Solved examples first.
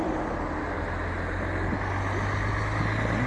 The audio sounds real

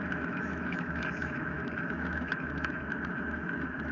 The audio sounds fake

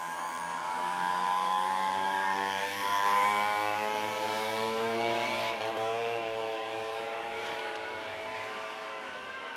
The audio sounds fake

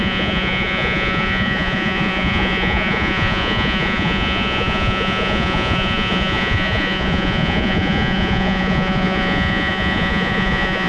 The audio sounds fake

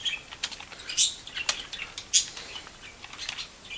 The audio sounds real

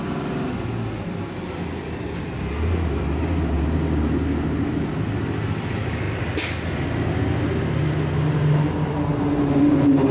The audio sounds real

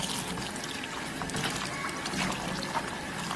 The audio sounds real